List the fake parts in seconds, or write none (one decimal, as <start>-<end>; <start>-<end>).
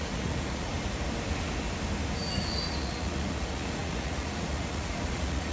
0.0-0.7; 2.2-5.5